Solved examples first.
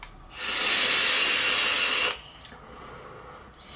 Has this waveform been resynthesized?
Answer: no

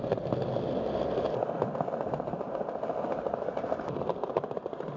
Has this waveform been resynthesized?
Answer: no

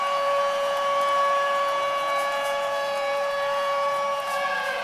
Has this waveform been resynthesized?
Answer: yes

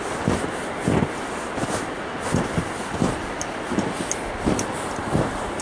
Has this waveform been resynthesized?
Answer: no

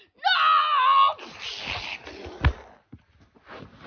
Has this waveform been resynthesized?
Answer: no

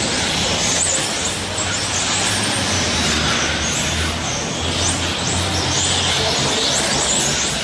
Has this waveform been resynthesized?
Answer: no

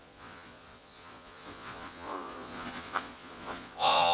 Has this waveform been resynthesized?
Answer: yes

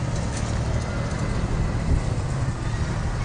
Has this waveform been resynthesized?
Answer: no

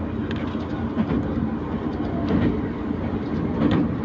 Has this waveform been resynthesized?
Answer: no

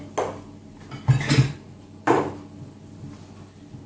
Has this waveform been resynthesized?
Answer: no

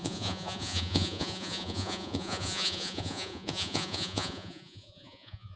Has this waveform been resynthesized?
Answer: yes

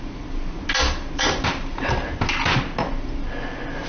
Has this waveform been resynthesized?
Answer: no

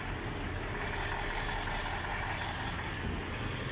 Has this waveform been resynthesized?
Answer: no